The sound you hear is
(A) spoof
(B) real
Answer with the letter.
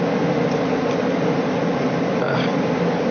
B